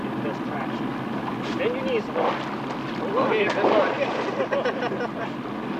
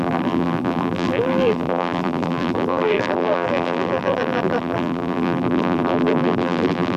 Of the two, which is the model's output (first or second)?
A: second